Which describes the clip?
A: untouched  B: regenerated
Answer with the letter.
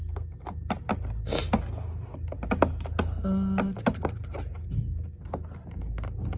A